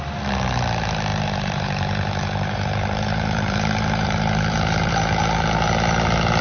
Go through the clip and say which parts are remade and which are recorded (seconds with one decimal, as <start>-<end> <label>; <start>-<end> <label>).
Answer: 0.0-1.1 recorded; 1.1-4.9 remade; 4.9-6.4 recorded